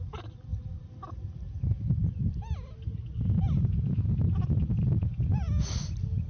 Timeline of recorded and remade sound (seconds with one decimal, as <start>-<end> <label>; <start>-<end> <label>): 0.0-6.3 recorded